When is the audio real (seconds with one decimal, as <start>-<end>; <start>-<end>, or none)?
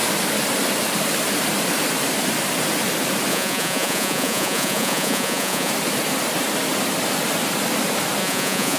0.0-3.3; 5.7-8.2